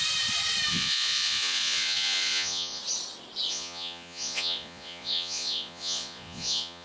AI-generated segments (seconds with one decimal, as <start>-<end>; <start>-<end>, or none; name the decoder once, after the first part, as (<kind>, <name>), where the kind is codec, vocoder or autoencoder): 0.7-2.8 (vocoder, Vocos); 3.5-6.8